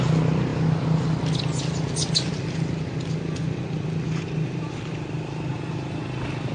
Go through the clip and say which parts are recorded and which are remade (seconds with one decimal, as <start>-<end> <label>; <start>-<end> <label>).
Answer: 0.0-6.5 recorded